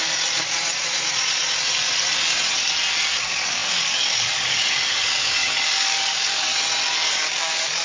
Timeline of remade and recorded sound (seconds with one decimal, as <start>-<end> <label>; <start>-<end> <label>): 0.0-3.2 recorded; 3.2-6.5 remade; 6.5-7.1 recorded; 7.1-7.8 remade